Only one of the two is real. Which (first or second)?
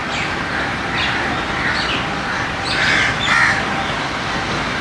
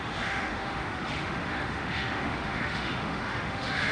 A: first